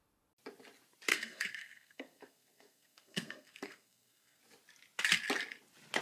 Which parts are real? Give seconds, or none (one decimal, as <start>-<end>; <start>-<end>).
0.0-1.1; 4.4-6.0